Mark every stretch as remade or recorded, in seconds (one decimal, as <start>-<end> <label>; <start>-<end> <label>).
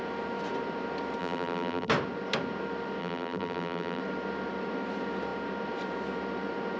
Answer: 0.0-1.2 recorded; 1.2-1.9 remade; 1.9-3.0 recorded; 3.0-4.0 remade; 4.0-6.8 recorded